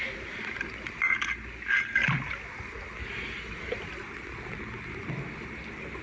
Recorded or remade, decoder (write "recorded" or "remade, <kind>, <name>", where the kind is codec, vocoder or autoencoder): recorded